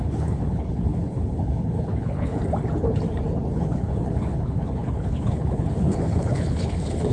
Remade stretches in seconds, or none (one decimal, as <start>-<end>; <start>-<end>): 0.0-2.4; 3.5-7.1